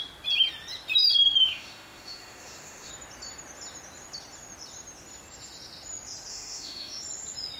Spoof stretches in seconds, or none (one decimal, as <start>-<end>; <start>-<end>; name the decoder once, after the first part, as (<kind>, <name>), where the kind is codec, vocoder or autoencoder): 1.2-2.9 (autoencoder, DAC-VAE); 6.3-7.0